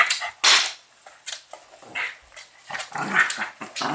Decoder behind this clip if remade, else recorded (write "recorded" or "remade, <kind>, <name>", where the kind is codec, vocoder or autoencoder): recorded